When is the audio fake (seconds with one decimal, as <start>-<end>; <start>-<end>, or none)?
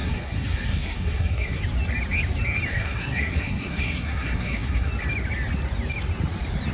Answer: 0.0-1.6; 2.7-4.9